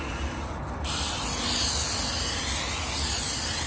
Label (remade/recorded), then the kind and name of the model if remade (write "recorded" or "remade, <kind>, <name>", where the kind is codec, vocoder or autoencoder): recorded